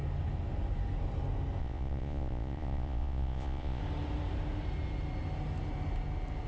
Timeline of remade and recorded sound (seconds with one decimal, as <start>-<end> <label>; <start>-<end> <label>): 0.0-1.6 recorded; 1.6-3.8 remade; 3.8-6.5 recorded